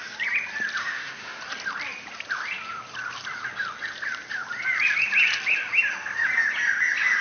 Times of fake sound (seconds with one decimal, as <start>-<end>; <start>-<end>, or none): 0.8-1.4